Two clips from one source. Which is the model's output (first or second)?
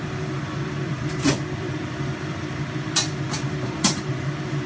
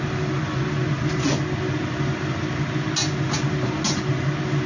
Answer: first